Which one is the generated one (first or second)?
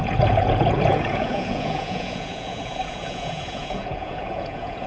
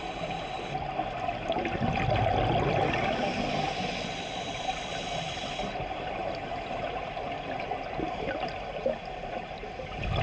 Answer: first